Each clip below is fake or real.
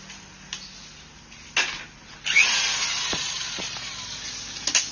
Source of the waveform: real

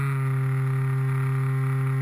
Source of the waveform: real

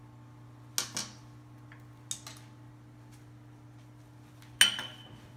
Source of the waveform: real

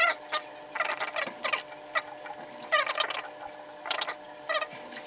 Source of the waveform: real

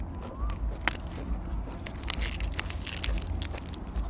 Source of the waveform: real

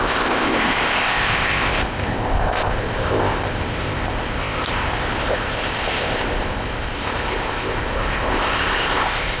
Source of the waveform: fake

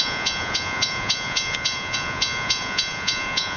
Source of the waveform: fake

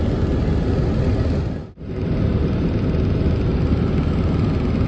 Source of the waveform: real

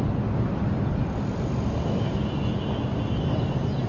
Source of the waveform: real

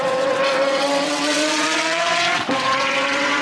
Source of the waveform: fake